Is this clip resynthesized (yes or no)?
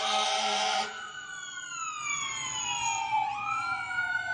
yes